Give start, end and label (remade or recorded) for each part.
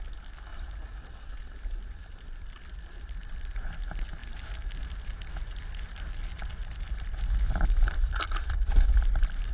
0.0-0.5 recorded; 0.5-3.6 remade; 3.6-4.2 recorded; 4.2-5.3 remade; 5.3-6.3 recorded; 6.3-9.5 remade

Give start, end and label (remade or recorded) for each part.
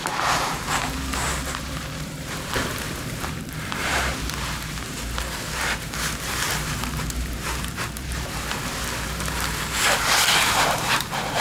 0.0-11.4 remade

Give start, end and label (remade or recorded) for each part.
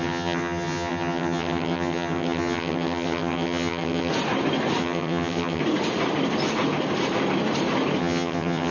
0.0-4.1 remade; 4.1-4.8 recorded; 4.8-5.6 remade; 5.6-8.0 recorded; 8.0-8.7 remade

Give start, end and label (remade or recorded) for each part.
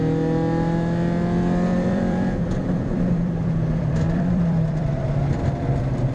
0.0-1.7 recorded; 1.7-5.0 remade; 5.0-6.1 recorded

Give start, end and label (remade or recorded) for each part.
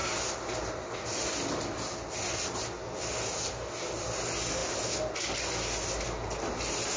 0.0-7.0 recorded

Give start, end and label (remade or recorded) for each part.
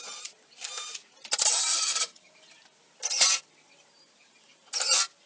0.0-1.7 recorded; 1.7-2.3 remade; 2.3-5.3 recorded